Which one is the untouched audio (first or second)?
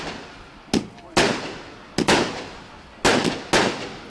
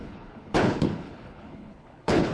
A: first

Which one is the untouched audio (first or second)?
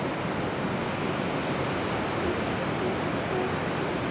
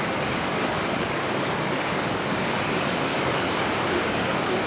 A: first